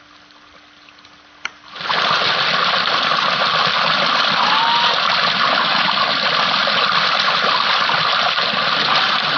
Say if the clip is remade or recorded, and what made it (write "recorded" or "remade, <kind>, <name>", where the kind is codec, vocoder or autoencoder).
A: recorded